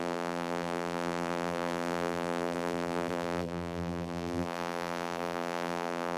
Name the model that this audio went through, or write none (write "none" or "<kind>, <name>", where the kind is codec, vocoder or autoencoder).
vocoder, BigVGAN v2